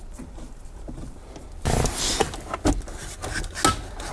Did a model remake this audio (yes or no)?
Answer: no